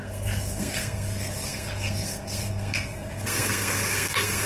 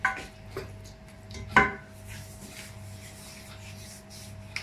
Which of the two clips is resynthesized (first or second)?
first